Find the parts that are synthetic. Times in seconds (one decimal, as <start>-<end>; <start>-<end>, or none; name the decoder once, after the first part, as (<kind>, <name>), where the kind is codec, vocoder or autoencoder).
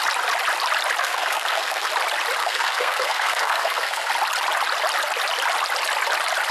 1.0-1.9 (codec, SNAC); 2.4-4.1